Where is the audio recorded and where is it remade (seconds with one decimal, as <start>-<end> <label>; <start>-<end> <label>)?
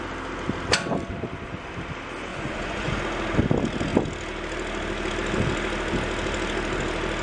0.0-2.3 recorded; 2.3-3.0 remade; 3.0-7.2 recorded